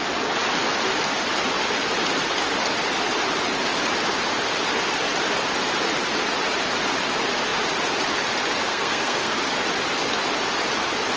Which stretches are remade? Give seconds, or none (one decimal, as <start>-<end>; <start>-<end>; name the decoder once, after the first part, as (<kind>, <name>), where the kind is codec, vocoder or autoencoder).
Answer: 8.7-9.4 (codec, SNAC)